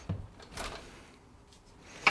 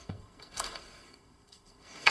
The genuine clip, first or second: first